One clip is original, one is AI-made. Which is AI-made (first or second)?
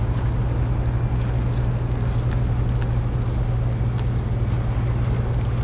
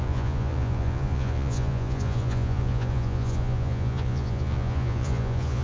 second